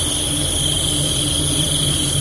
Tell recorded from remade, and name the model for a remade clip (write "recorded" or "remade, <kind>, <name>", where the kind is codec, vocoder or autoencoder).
remade, vocoder, BigVGAN v2